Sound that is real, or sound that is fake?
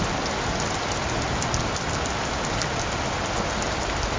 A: real